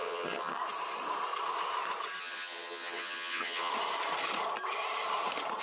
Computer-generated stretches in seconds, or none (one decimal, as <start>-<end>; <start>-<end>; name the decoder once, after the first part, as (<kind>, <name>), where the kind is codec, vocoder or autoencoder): 0.0-0.6 (vocoder, HiFi-GAN); 2.2-3.7